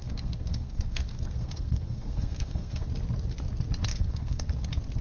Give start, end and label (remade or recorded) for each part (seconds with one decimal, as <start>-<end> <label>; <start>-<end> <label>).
0.0-2.9 remade; 2.9-3.9 recorded; 3.9-4.5 remade; 4.5-5.0 recorded